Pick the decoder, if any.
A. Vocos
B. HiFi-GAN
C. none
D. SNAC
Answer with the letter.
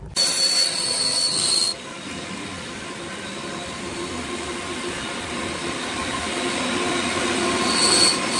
C